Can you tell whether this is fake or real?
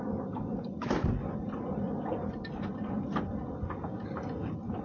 real